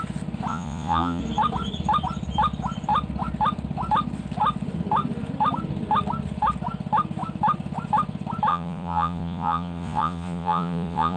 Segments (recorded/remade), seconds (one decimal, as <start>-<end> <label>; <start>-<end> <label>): 0.0-0.5 recorded; 0.5-1.2 remade; 1.2-8.5 recorded; 8.5-11.2 remade